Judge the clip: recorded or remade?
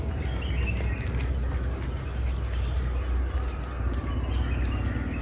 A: recorded